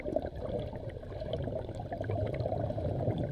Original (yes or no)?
yes